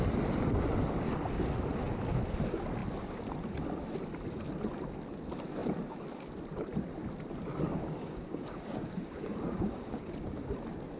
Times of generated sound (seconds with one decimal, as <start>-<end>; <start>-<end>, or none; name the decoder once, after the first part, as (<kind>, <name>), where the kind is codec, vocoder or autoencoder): 7.8-10.5 (codec, DAC)